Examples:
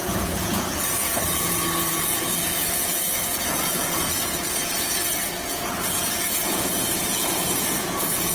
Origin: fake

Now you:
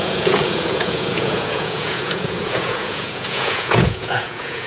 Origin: fake